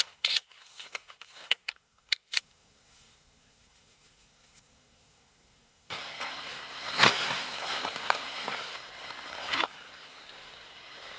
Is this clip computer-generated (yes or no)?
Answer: yes